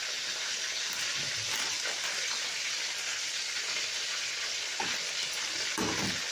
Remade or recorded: recorded